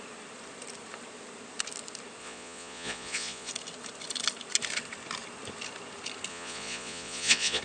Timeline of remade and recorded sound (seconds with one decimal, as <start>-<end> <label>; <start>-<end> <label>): 0.0-2.2 recorded; 2.2-3.5 remade; 3.5-6.3 recorded; 6.3-7.6 remade